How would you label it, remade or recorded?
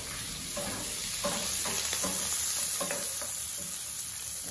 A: recorded